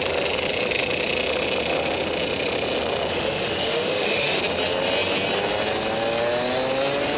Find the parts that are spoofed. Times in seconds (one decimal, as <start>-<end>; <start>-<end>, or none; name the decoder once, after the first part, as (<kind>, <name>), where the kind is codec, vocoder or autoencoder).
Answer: 3.1-4.4 (autoencoder, DAC-VAE)